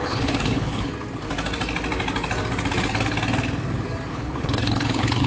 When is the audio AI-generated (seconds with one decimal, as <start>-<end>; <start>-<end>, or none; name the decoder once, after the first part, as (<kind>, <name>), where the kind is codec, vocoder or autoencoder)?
0.0-0.9 (codec, HILCodec); 4.1-5.3